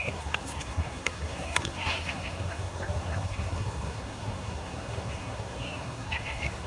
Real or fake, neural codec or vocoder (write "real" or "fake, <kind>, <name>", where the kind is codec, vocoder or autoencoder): fake, codec, SNAC